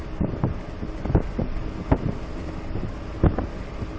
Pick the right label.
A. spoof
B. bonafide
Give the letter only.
B